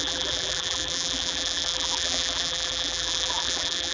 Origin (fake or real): fake